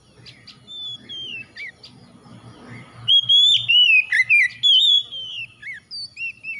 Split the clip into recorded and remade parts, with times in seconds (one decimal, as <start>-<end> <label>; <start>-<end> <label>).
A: 0.0-6.6 recorded